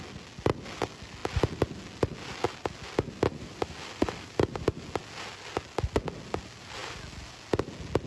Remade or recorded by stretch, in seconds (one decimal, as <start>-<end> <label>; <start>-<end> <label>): 0.0-8.1 recorded